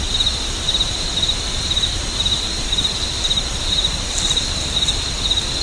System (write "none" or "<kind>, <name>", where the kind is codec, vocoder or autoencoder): none